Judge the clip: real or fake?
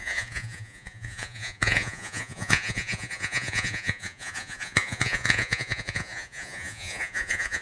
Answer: fake